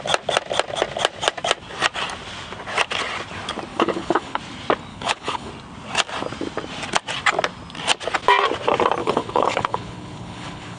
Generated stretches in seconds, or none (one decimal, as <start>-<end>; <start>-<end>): 3.7-4.4; 4.9-5.5; 9.0-10.8